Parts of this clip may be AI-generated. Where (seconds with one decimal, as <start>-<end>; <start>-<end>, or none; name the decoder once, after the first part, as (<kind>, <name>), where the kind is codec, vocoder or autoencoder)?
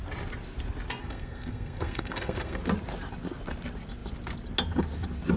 1.0-2.6 (codec, SNAC)